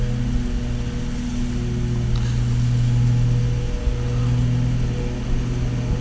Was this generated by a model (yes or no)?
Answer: no